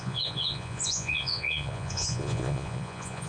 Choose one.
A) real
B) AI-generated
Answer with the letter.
B